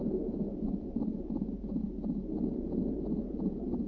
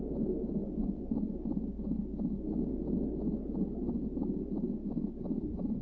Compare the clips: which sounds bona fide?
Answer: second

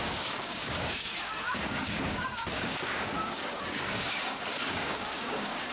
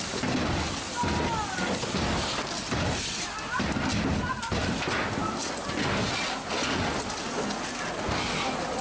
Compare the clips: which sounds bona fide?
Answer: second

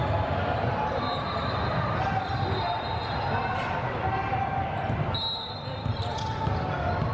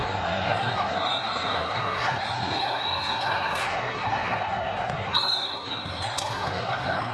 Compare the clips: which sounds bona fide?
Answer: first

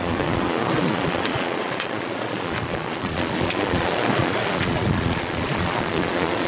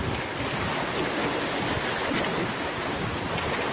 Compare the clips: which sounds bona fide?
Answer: second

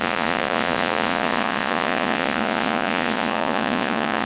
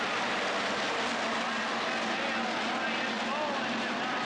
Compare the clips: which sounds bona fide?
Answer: second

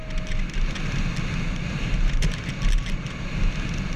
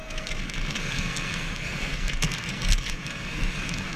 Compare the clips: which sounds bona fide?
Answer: first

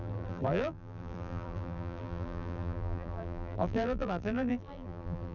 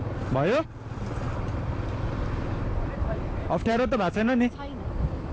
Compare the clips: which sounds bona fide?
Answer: second